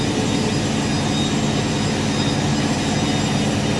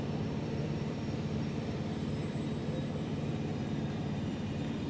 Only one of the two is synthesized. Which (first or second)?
second